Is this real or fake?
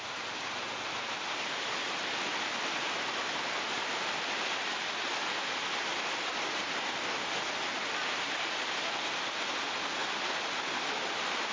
real